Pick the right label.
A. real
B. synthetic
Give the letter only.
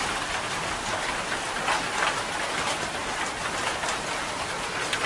A